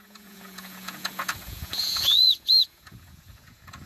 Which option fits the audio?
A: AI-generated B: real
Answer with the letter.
A